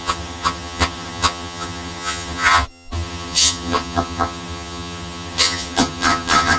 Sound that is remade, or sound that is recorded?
remade